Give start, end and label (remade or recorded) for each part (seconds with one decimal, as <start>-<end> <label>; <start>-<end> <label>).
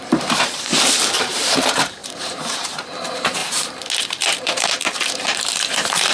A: 0.0-3.4 remade; 3.4-4.0 recorded; 4.0-6.1 remade